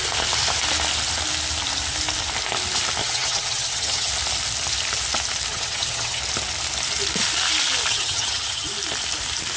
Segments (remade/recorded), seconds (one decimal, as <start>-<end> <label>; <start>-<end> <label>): 0.0-3.0 recorded; 3.0-4.1 remade; 4.1-5.5 recorded; 5.5-6.2 remade; 6.2-7.9 recorded; 7.9-8.7 remade; 8.7-9.6 recorded